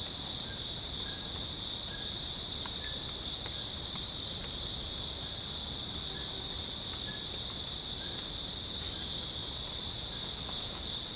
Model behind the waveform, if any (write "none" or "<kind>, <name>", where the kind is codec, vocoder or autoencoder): none